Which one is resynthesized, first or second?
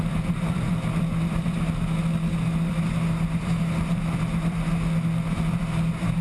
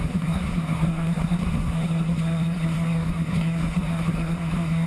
second